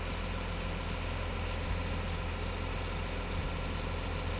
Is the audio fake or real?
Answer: real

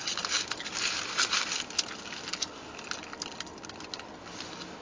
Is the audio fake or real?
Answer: real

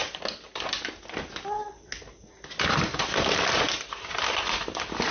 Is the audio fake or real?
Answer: real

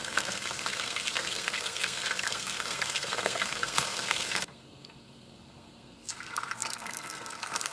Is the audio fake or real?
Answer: fake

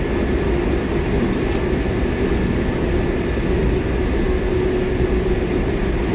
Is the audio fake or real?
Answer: real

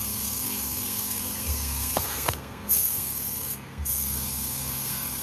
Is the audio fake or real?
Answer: fake